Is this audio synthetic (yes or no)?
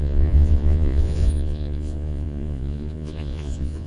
yes